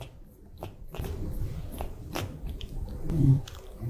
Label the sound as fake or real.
fake